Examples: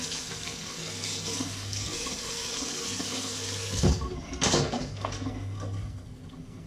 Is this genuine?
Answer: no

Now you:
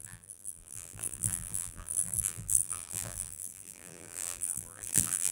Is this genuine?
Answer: no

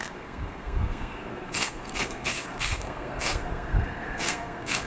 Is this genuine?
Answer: no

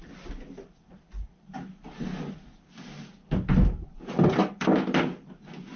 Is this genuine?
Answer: yes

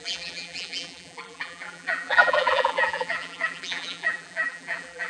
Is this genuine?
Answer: no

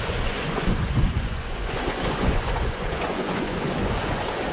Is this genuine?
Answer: no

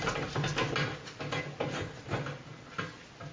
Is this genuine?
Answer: yes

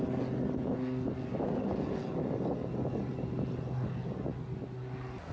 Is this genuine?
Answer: yes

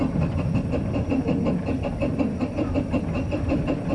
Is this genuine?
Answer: no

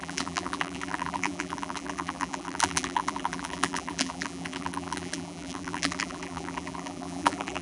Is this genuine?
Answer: no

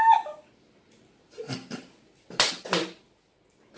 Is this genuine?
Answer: yes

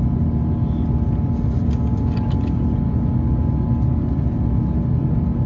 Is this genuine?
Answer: yes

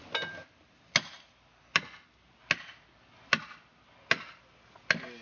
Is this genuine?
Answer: yes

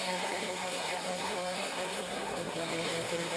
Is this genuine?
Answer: no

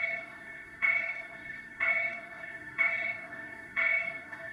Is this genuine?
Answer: no